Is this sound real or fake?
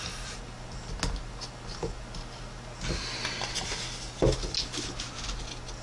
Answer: real